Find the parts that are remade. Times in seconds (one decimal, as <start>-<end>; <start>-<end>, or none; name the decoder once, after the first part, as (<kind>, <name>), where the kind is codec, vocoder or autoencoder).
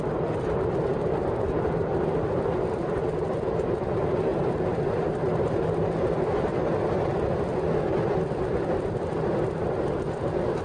4.3-5.8 (vocoder, BigVGAN v2)